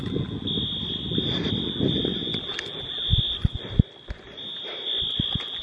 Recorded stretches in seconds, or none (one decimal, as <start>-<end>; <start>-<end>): 0.0-5.6